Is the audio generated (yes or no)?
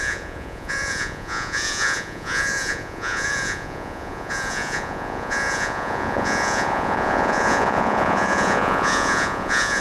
yes